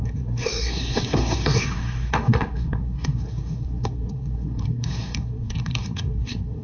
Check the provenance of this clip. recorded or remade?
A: remade